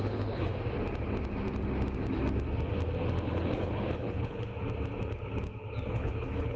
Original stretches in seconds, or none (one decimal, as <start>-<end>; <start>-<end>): 0.5-3.3; 4.5-5.9